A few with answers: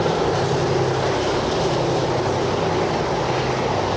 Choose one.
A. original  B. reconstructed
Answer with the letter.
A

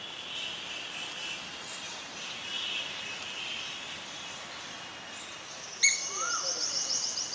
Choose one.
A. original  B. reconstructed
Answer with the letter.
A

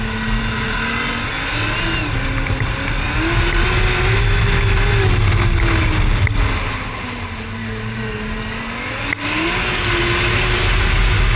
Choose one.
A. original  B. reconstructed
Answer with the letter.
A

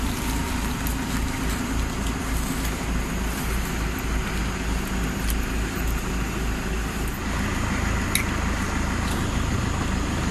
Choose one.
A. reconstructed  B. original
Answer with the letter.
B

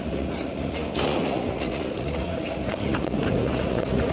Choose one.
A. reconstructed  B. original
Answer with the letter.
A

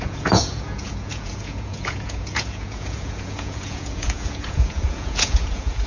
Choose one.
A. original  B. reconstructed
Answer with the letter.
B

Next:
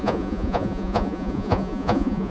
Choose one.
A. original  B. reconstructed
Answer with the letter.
B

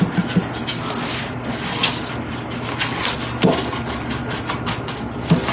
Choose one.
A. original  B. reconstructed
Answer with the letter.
A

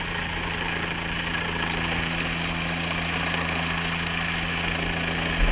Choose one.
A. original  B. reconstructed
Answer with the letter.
A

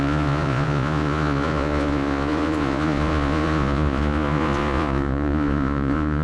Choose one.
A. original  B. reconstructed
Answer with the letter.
B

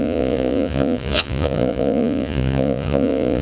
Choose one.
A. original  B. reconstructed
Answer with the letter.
B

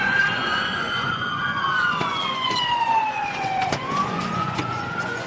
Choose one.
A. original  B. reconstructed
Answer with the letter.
B